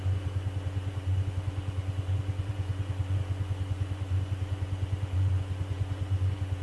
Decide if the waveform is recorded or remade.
remade